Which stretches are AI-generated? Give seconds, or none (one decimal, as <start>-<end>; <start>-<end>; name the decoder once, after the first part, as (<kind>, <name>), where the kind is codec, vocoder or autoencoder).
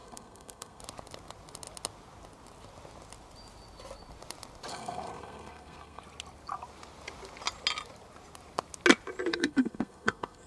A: 0.0-0.8 (codec, SNAC); 4.7-6.0; 9.3-10.5